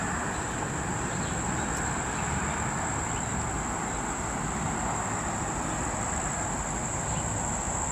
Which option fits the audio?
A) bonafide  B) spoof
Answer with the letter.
A